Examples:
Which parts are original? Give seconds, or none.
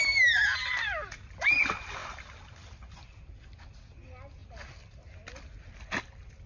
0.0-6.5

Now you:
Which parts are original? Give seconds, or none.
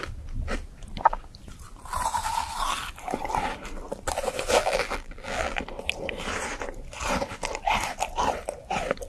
0.0-4.6; 5.6-9.1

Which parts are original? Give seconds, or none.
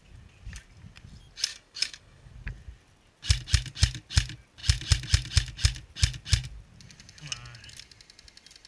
0.0-1.5; 2.3-8.7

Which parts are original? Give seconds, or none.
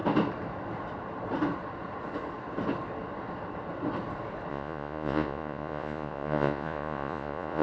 0.0-4.5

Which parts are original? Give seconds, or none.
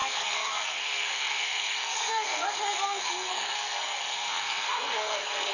none